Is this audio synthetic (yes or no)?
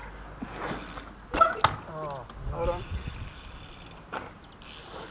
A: no